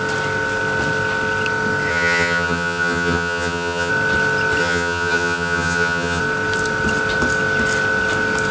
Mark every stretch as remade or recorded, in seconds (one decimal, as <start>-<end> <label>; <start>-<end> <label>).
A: 0.0-1.9 recorded; 1.9-3.9 remade; 3.9-4.6 recorded; 4.6-6.2 remade; 6.2-8.5 recorded